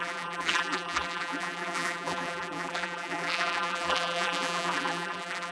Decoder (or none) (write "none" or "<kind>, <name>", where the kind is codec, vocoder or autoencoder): vocoder, BigVGAN v2